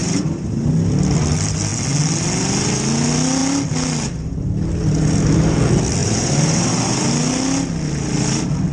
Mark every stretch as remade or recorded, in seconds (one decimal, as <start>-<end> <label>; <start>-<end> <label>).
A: 0.0-0.7 remade; 0.7-6.0 recorded; 6.0-7.1 remade; 7.1-8.7 recorded

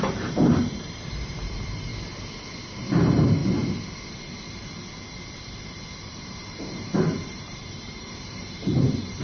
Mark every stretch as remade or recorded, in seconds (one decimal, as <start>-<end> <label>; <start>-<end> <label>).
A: 0.0-1.9 remade; 1.9-2.9 recorded; 2.9-3.4 remade; 3.4-6.1 recorded; 6.1-9.2 remade

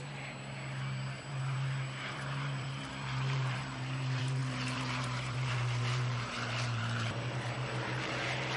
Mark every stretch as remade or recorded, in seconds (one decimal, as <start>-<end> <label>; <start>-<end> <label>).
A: 0.0-8.6 remade

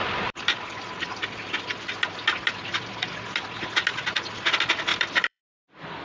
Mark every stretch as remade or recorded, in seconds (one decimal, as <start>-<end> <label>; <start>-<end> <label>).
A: 0.0-1.5 remade; 1.5-4.9 recorded; 4.9-5.4 remade; 5.4-6.0 recorded

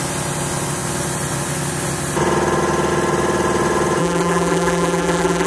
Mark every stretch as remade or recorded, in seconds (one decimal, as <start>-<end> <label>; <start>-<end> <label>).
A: 0.0-4.0 recorded; 4.0-5.5 remade

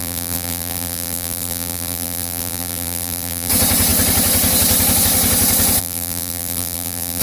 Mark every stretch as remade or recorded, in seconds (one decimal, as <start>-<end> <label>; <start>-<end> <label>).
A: 0.0-3.5 remade; 3.5-5.8 recorded; 5.8-7.2 remade

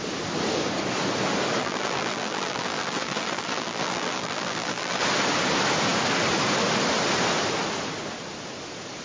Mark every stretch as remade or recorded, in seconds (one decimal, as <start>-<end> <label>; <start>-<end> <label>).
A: 0.0-1.6 recorded; 1.6-5.0 remade; 5.0-9.0 recorded

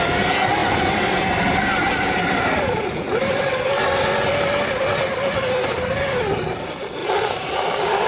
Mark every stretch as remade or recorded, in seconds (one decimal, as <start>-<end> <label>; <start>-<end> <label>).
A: 0.0-7.0 recorded; 7.0-8.1 remade